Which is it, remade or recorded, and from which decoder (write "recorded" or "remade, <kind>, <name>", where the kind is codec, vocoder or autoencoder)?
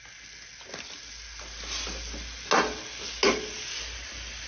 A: recorded